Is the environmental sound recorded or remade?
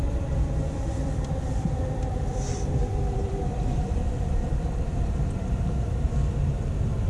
remade